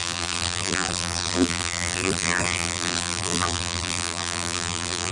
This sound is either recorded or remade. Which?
remade